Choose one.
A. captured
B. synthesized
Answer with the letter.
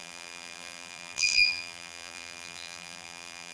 B